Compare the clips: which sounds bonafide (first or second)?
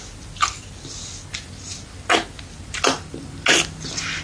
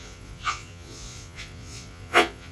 first